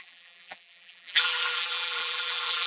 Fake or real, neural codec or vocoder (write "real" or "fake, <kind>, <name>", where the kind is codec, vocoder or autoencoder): fake, vocoder, BigVGAN v2